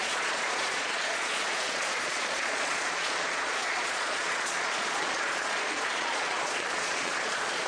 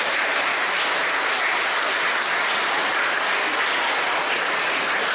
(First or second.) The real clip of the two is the second